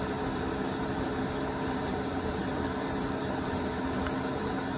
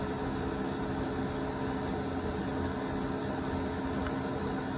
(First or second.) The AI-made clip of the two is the first